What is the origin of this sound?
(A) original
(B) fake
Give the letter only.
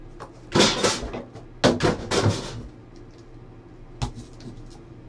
A